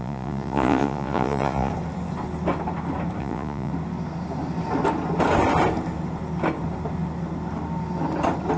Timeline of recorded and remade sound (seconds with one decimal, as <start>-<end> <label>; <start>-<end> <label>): 0.0-1.7 remade; 1.7-3.2 recorded; 3.2-3.7 remade; 3.7-8.6 recorded